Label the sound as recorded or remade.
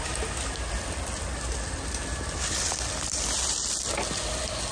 recorded